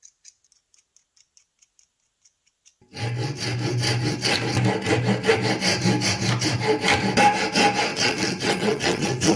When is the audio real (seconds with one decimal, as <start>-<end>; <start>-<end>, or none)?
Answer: 0.0-7.9